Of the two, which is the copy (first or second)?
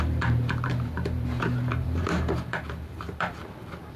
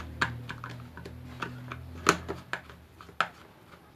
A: first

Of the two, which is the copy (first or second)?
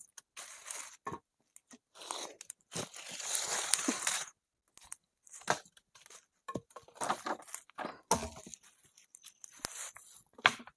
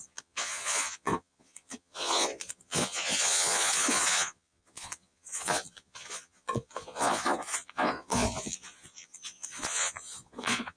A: second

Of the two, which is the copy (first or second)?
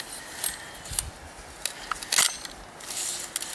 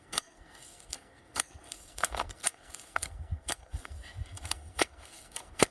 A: second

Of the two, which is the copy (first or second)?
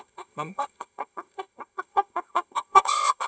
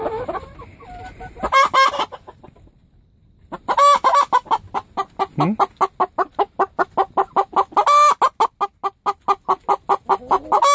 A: first